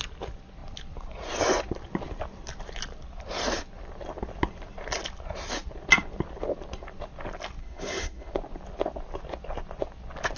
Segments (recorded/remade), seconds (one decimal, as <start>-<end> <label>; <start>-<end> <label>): 0.0-7.6 recorded; 7.6-8.3 remade; 8.3-10.4 recorded